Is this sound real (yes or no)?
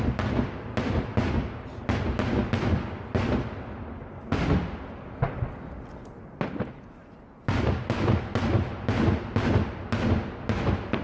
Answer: yes